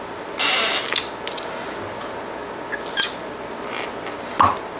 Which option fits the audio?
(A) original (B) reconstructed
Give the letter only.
A